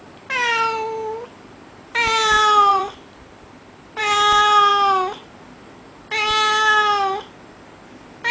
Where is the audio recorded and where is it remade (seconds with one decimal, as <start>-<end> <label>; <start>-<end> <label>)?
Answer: 0.0-2.7 recorded; 2.7-4.0 remade; 4.0-8.3 recorded